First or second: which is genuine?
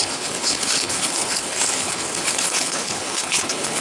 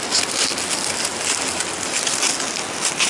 second